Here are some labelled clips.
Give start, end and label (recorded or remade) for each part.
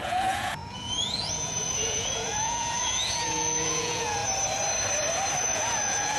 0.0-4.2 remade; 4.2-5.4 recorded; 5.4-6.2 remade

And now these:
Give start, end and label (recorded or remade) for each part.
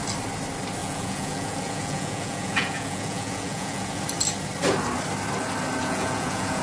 0.0-0.8 recorded; 0.8-4.0 remade; 4.0-5.8 recorded; 5.8-6.6 remade